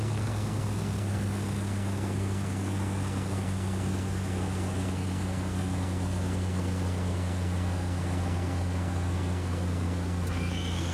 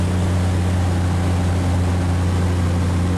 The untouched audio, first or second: second